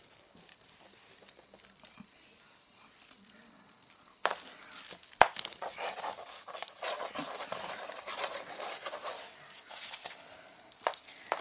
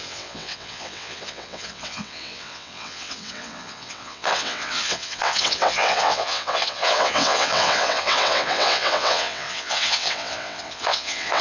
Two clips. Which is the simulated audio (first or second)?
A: second